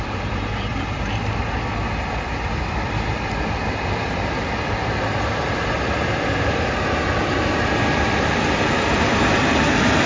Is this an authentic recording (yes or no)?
no